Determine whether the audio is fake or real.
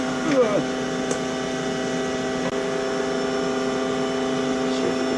real